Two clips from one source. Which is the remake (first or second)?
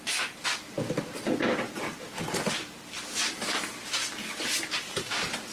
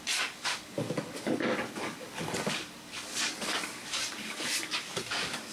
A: second